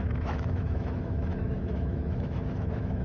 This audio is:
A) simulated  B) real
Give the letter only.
A